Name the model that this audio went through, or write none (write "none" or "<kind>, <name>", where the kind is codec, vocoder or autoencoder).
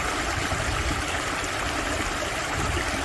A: vocoder, BigVGAN v2